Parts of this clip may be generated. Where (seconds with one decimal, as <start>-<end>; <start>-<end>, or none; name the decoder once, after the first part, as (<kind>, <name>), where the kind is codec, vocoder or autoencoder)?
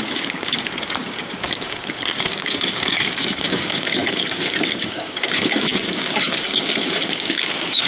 0.0-7.9 (codec, DAC)